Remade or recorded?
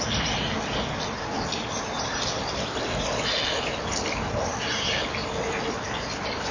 recorded